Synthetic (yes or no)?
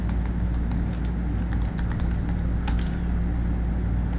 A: no